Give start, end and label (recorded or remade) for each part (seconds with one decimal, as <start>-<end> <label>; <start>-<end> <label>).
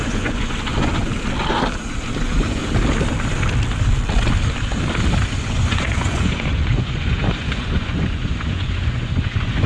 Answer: 0.0-0.9 remade; 0.9-2.2 recorded; 2.2-2.6 remade; 2.6-5.3 recorded; 5.3-9.7 remade